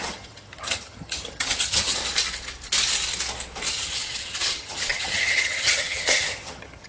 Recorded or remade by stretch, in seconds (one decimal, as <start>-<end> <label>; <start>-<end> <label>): 0.0-2.0 remade; 2.0-3.7 recorded; 3.7-6.9 remade